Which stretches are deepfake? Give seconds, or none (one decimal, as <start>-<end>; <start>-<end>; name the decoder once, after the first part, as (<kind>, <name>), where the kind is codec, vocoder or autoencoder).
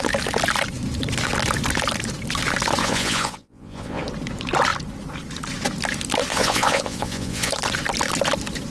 2.8-4.0 (vocoder, Vocos); 6.3-7.5